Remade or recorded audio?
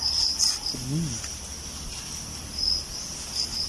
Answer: recorded